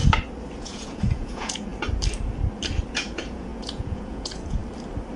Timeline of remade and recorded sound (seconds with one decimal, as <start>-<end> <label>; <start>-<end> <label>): 0.0-0.6 recorded; 0.6-1.7 remade; 1.7-2.9 recorded; 2.9-4.6 remade; 4.6-5.2 recorded